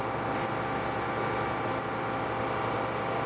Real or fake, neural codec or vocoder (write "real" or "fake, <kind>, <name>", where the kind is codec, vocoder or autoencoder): real